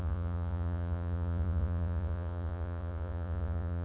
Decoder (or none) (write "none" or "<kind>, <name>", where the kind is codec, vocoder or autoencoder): vocoder, Vocos